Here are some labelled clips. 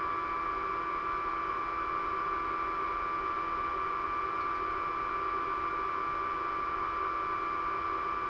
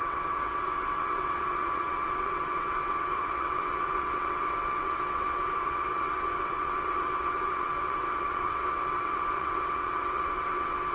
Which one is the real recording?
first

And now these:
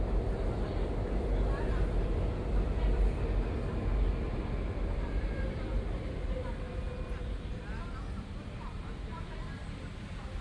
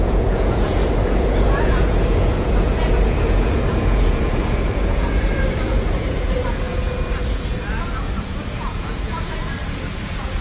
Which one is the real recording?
first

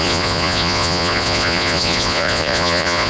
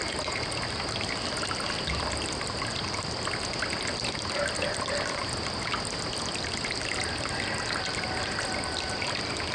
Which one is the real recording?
second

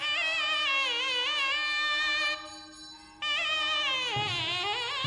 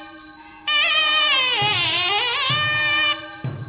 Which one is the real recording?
first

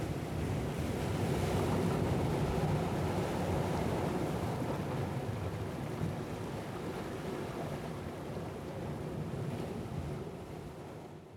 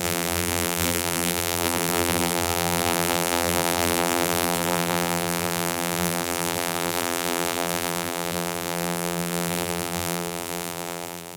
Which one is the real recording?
first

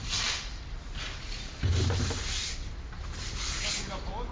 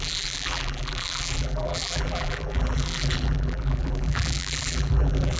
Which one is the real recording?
first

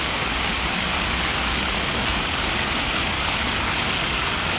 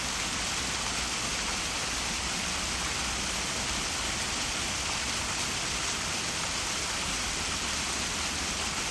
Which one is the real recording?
second